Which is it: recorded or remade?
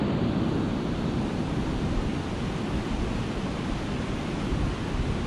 recorded